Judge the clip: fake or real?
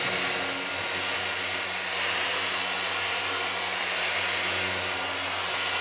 real